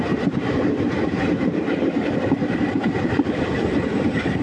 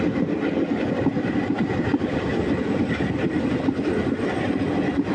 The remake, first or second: first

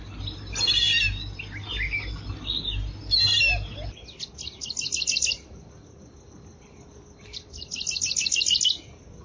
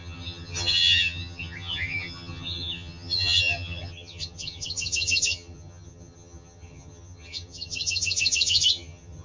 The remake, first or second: second